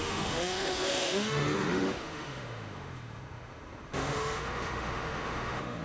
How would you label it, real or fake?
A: fake